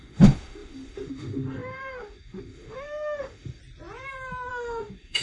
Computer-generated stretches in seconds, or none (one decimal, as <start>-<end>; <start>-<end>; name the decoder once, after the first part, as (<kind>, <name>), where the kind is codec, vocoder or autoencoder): 0.0-3.6 (autoencoder, DAC-VAE); 4.5-5.2